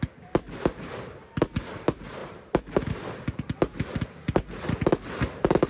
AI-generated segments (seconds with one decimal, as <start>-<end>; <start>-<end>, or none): none